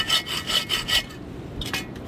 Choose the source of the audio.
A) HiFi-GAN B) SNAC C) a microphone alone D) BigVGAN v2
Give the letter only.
C